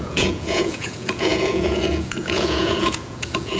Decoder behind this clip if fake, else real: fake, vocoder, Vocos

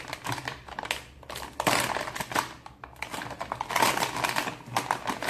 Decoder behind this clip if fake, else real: real